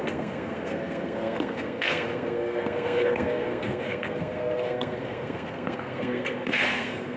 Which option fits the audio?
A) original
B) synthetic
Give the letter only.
B